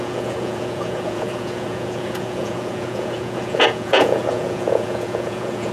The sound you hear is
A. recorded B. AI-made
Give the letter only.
B